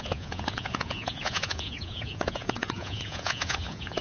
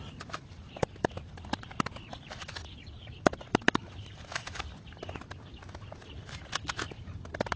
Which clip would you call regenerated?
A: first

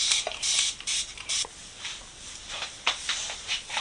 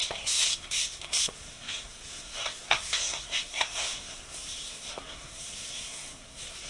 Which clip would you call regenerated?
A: second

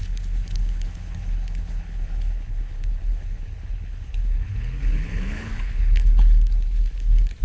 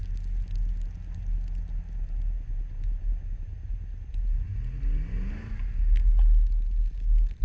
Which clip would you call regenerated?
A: first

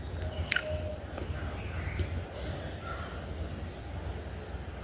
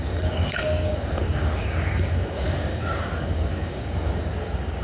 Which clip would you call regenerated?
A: second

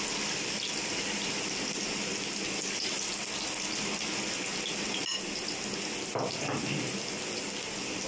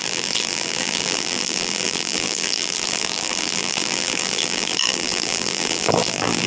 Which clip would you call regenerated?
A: second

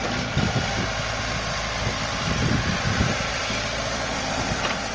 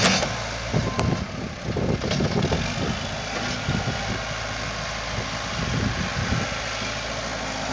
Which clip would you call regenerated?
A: first